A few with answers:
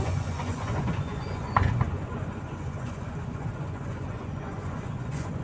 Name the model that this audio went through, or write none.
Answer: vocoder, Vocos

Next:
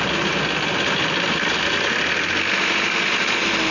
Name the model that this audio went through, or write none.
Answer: none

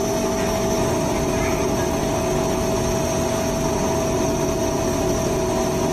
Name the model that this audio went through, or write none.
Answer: none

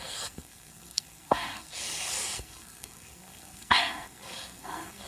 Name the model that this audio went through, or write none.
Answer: codec, SNAC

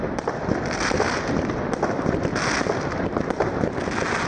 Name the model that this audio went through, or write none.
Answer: none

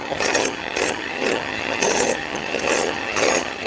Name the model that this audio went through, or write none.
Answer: vocoder, HiFi-GAN